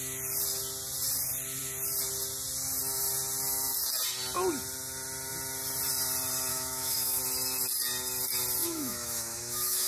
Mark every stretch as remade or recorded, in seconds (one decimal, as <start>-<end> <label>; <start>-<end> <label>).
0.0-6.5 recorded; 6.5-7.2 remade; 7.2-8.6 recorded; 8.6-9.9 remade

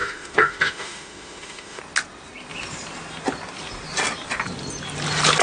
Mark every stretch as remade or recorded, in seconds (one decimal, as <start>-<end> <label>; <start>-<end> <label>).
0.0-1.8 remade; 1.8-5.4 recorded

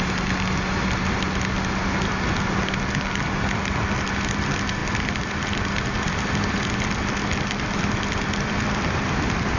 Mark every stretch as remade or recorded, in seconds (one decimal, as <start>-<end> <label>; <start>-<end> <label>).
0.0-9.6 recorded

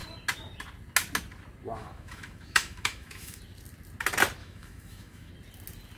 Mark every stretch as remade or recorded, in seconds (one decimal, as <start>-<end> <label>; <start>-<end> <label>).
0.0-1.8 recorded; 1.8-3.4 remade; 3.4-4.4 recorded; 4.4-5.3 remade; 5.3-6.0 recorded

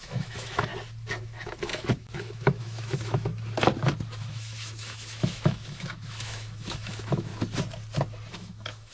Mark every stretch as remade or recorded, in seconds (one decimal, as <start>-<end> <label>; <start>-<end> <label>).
0.0-0.7 remade; 0.7-1.2 recorded; 1.2-3.3 remade; 3.3-4.2 recorded; 4.2-7.3 remade; 7.3-8.3 recorded; 8.3-8.9 remade

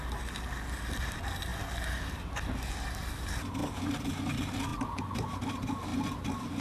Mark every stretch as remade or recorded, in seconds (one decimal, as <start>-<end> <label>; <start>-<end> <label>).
0.0-6.6 recorded

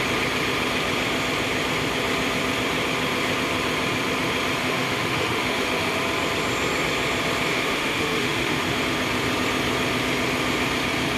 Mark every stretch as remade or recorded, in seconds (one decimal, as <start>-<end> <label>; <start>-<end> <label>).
0.0-4.6 recorded; 4.6-6.0 remade; 6.0-7.5 recorded; 7.5-8.8 remade; 8.8-11.2 recorded

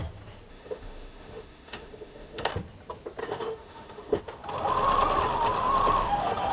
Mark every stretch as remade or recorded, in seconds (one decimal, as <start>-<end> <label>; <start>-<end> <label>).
0.0-0.5 recorded; 0.5-2.5 remade; 2.5-3.2 recorded; 3.2-4.2 remade; 4.2-6.0 recorded; 6.0-6.5 remade